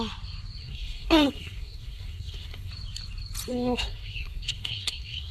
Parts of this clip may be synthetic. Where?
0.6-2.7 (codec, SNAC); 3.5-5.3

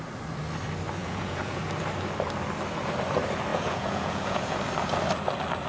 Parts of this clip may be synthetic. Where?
1.0-1.6 (vocoder, Vocos); 3.5-4.6

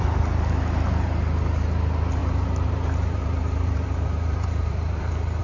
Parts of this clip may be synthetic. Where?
2.2-5.4 (vocoder, BigVGAN v2)

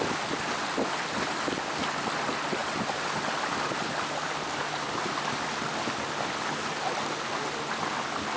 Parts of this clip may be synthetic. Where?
none

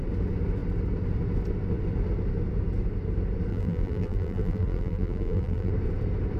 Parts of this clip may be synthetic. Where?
3.5-5.7 (vocoder, BigVGAN v2)

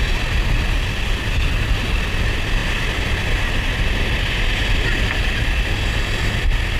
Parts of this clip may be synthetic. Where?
none